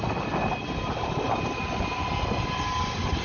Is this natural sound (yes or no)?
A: yes